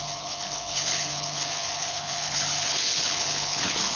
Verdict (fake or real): fake